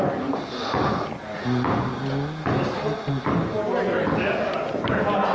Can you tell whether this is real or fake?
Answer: real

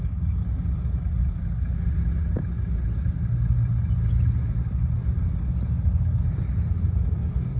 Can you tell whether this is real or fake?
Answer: real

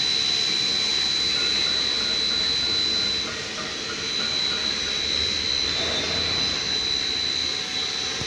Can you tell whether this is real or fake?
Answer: real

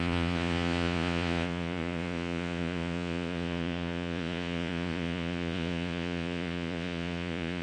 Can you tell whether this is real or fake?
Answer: fake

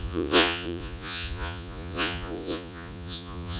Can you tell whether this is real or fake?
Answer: fake